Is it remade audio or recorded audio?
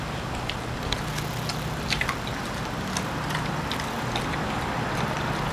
recorded